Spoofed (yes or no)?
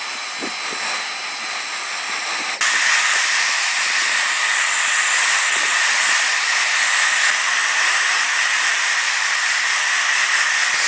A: no